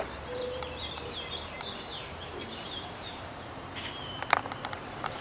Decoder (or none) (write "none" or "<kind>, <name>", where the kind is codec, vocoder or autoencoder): vocoder, BigVGAN v2